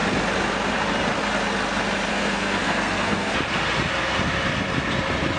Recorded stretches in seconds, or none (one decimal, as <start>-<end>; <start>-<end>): 0.0-2.1; 3.3-5.4